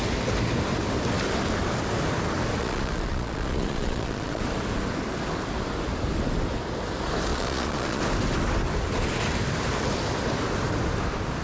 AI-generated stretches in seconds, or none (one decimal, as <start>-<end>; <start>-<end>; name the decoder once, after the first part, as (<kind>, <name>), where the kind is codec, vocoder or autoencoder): 2.6-4.4 (vocoder, Vocos); 7.3-8.0